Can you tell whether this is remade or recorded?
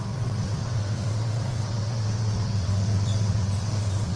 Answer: remade